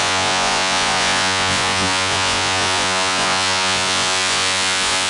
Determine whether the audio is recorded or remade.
remade